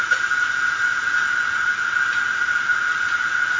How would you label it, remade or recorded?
recorded